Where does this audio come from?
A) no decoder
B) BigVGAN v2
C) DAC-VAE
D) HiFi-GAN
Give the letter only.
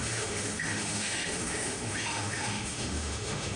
C